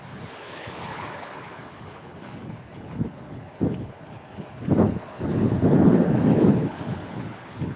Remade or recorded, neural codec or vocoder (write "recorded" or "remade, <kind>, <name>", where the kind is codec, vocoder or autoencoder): remade, codec, HILCodec